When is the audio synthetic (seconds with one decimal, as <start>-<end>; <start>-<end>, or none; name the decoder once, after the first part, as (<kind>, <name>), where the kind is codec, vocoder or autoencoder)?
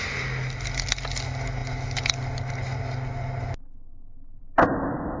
none